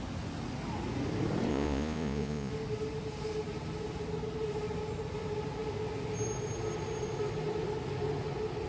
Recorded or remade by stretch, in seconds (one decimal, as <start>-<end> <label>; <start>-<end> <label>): 0.0-1.5 recorded; 1.5-2.5 remade; 2.5-8.7 recorded